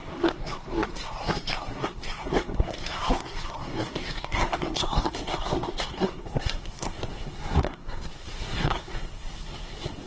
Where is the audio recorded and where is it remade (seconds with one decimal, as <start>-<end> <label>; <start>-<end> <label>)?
0.0-10.1 remade